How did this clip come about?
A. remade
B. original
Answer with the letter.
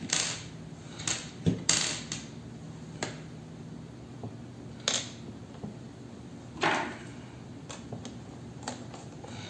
B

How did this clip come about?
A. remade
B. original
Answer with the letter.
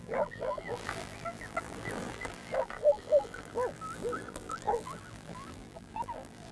A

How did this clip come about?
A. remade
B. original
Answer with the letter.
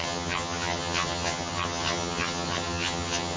A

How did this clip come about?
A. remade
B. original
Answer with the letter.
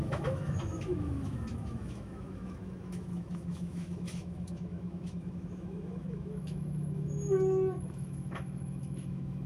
A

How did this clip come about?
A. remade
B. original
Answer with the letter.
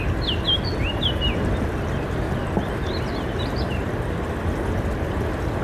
B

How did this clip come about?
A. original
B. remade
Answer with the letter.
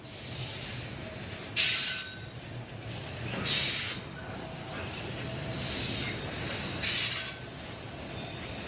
A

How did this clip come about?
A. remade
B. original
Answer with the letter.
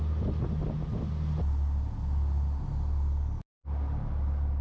B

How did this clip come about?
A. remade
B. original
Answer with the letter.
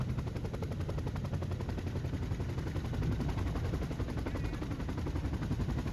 B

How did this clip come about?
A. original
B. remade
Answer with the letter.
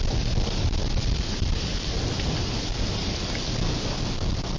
A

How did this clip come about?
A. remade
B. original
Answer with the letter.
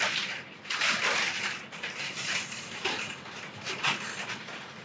B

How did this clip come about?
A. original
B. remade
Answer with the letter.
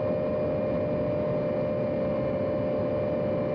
A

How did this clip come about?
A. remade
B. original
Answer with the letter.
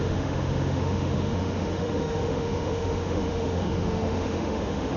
A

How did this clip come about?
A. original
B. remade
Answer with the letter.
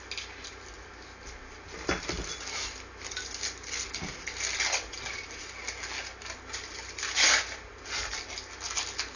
A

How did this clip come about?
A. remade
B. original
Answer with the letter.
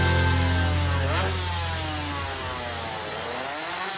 B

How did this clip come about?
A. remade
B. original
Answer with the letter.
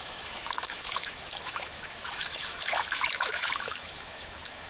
A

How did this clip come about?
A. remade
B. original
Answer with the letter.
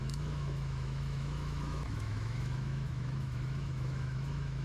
A